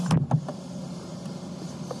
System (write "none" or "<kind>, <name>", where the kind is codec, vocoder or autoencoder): none